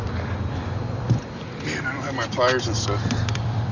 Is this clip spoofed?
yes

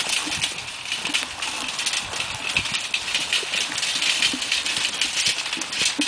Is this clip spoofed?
no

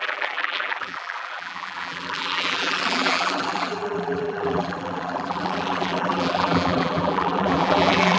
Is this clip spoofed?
yes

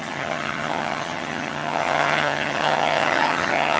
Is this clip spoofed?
yes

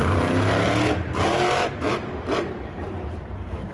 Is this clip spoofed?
yes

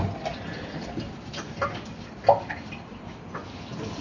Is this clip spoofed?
no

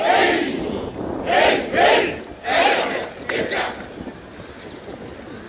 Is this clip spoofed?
no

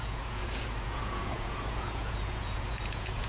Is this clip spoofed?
yes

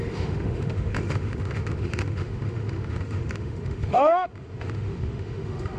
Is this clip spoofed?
yes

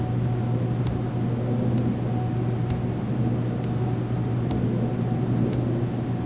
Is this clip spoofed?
no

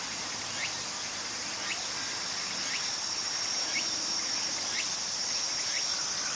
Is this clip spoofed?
no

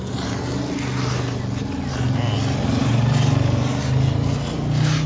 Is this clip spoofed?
no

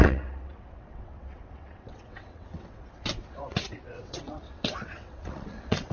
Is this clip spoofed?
yes